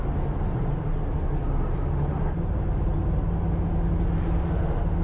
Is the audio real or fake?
real